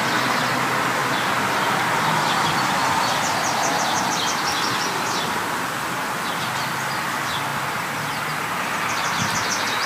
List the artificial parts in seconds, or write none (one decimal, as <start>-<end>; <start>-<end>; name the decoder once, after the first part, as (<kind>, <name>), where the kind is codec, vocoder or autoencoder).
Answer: 7.5-8.1 (vocoder, BigVGAN v2)